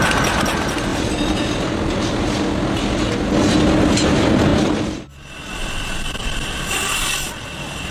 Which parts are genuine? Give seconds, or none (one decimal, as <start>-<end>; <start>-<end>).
0.0-0.9; 2.3-6.2